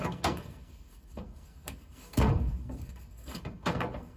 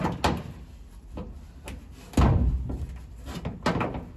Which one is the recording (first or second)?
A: second